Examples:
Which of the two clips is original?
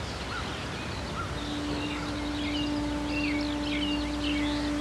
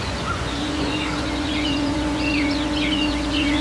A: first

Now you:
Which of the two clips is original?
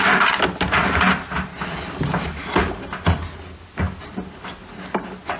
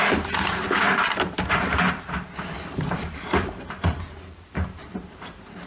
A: first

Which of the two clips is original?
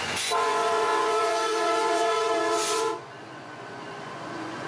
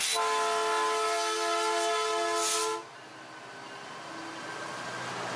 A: second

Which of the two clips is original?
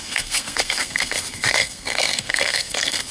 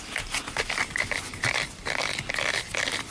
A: second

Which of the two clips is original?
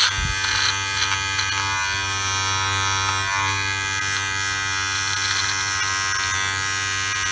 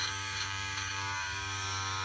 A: first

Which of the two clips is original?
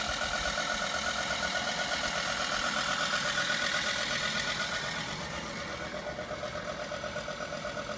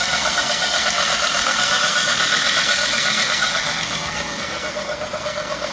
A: first